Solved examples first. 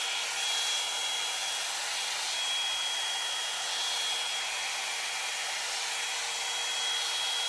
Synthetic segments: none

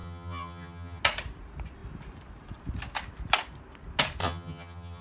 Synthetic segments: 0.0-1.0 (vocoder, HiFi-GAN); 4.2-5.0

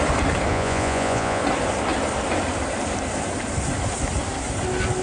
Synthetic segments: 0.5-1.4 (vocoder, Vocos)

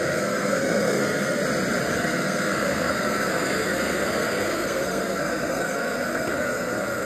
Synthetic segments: 0.0-1.4 (codec, SNAC); 1.9-7.1